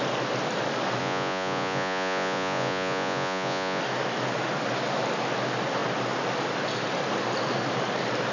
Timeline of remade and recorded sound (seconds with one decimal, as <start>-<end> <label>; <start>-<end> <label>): 0.0-1.0 recorded; 1.0-3.8 remade; 3.8-8.3 recorded